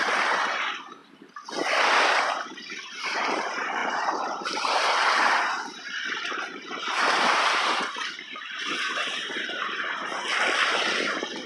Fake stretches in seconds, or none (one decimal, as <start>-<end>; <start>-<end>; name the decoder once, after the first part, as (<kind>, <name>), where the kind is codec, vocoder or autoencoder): 0.0-1.0 (vocoder, BigVGAN v2); 2.2-10.0; 10.7-11.5